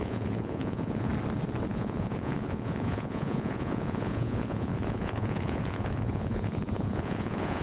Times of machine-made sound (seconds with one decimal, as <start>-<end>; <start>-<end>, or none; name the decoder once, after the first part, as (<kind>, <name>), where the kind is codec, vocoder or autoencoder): 0.0-1.1 (vocoder, Vocos); 1.7-7.6